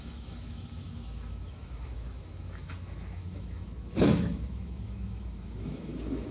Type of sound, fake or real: fake